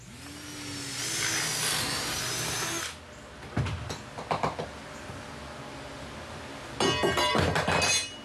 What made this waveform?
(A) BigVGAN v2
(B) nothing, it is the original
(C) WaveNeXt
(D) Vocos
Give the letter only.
B